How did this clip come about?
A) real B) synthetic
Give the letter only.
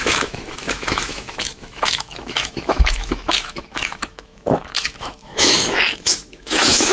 B